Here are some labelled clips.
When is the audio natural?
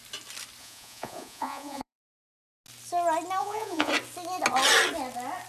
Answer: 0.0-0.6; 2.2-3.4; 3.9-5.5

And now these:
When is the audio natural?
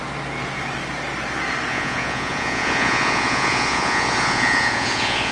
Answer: 0.0-1.7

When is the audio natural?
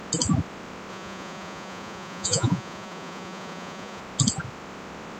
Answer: 0.0-0.9; 4.0-5.2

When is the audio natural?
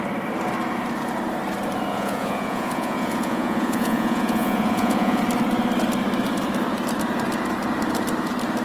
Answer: 0.0-1.9; 5.2-8.6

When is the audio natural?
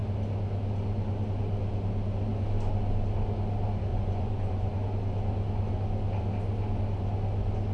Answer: 0.0-3.9; 4.8-7.7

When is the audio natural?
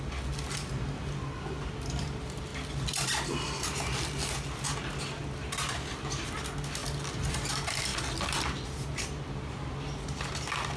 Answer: 0.0-10.8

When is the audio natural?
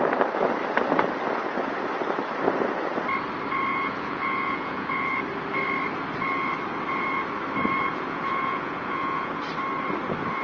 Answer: 0.0-3.7; 5.2-7.9; 9.4-10.4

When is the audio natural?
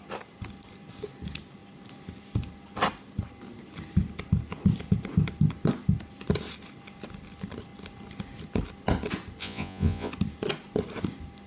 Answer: 0.0-9.4; 10.1-11.5